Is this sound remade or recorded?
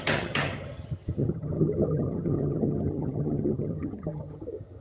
remade